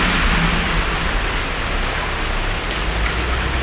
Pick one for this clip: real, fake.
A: real